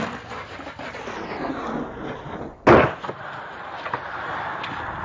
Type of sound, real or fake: real